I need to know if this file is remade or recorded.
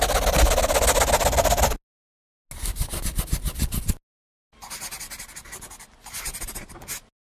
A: recorded